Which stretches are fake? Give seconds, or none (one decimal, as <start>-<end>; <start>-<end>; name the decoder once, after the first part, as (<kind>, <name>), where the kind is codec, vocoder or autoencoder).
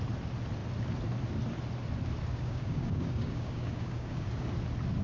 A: 2.3-4.3 (codec, DAC)